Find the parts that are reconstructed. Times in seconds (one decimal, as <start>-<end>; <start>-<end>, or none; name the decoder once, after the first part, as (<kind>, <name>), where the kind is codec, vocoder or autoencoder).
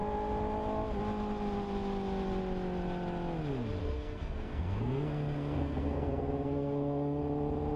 3.8-7.2 (codec, SNAC)